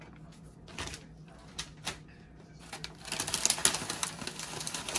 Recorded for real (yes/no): yes